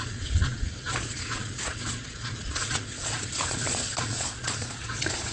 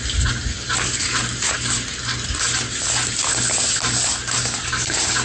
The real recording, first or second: second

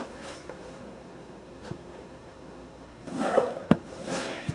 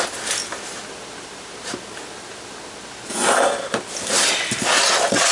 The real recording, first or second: second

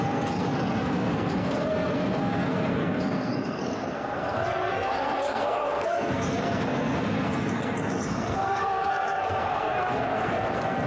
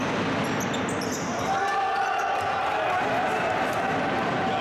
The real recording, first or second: second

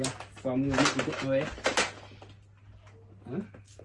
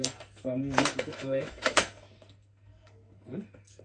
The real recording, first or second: first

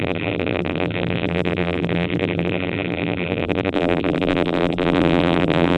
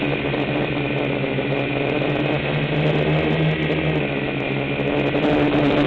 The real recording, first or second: second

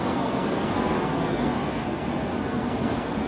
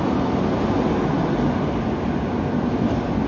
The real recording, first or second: second